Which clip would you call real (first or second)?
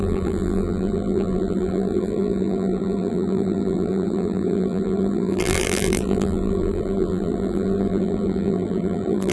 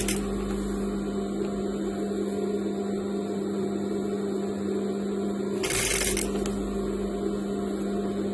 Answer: second